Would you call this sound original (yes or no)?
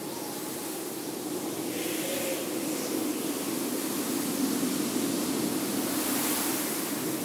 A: yes